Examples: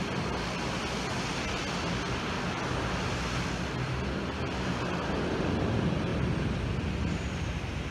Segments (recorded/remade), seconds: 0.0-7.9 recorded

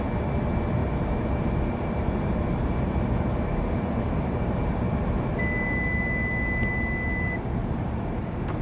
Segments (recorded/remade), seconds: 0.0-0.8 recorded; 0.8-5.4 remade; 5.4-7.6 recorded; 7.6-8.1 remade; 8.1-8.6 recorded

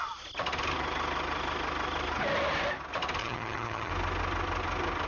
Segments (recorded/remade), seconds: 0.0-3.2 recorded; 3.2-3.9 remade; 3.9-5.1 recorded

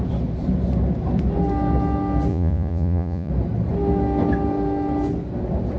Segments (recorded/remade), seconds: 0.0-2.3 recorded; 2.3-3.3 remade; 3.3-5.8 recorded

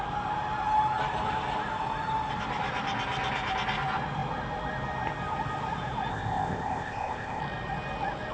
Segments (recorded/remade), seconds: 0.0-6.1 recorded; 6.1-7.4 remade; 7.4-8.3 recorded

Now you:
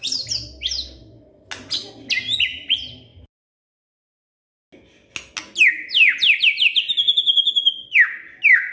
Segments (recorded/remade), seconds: 0.0-7.0 recorded; 7.0-7.5 remade; 7.5-8.7 recorded

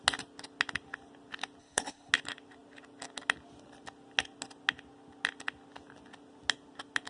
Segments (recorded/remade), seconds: 0.0-1.6 recorded; 1.6-2.1 remade; 2.1-7.1 recorded